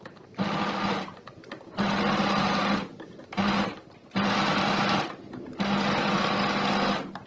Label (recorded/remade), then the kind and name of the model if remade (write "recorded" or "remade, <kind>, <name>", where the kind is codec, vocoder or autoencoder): recorded